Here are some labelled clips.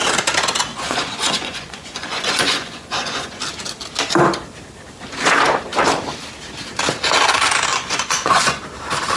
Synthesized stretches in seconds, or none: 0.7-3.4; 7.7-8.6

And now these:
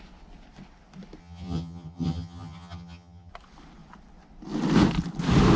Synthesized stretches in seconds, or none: 1.2-3.3